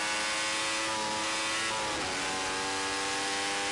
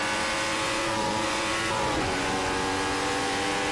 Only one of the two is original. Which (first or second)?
first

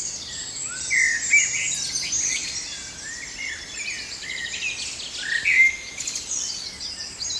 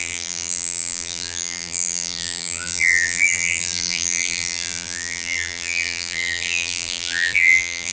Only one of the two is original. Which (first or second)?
first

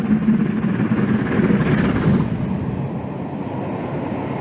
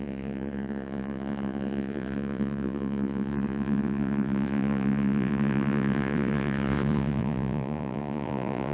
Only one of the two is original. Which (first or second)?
first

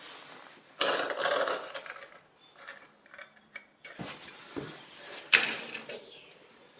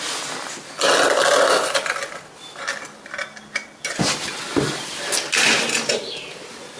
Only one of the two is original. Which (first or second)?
second